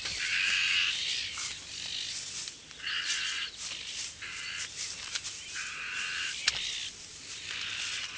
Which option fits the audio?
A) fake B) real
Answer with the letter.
B